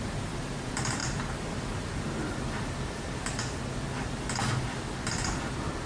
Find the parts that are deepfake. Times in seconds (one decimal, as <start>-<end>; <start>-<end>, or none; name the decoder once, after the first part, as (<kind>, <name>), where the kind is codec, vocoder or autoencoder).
none